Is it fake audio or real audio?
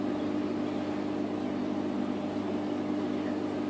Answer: real